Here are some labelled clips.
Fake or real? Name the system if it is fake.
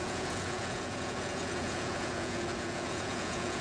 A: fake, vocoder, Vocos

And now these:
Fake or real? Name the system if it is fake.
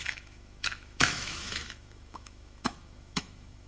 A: fake, autoencoder, DAC-VAE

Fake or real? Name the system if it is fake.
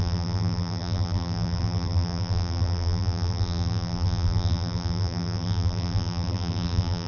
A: fake, vocoder, BigVGAN v2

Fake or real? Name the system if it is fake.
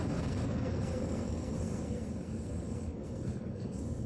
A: fake, codec, SNAC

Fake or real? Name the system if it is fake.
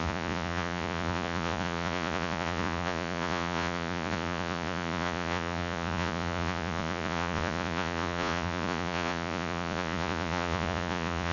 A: fake, vocoder, Vocos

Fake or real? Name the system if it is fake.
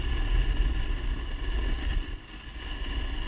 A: real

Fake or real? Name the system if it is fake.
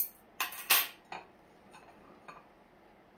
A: real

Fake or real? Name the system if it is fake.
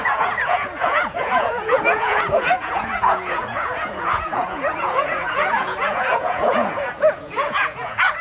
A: fake, vocoder, Vocos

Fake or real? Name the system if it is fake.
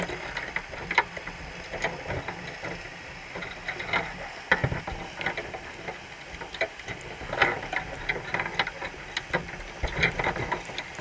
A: real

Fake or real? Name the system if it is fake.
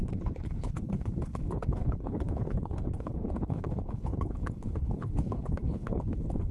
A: fake, codec, HILCodec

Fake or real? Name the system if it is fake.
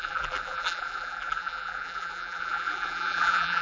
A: fake, vocoder, BigVGAN v2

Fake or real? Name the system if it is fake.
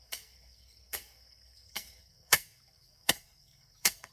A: fake, codec, SNAC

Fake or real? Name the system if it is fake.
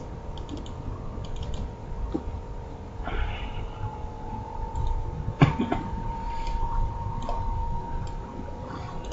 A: fake, vocoder, BigVGAN v2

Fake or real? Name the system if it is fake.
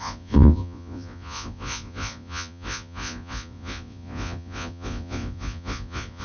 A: fake, vocoder, Vocos